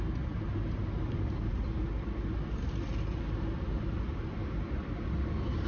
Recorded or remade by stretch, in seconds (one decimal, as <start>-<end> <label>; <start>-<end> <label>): 0.0-1.5 recorded; 1.5-4.9 remade; 4.9-5.7 recorded